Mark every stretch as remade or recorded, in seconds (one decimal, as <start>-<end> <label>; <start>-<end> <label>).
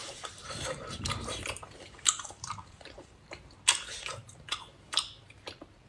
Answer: 0.0-3.5 remade; 3.5-5.9 recorded